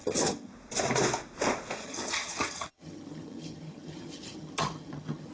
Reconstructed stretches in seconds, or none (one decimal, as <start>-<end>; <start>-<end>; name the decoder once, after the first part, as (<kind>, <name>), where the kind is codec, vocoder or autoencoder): 0.0-0.5 (vocoder, HiFi-GAN); 1.8-5.3